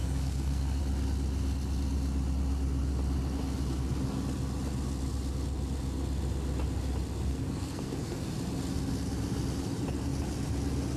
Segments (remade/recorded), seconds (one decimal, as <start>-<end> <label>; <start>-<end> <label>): 0.0-0.8 remade; 0.8-7.3 recorded; 7.3-8.3 remade; 8.3-11.0 recorded